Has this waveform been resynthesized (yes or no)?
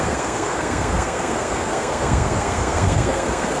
yes